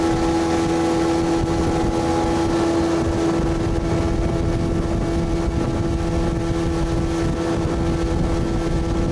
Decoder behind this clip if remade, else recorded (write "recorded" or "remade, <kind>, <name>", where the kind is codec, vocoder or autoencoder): recorded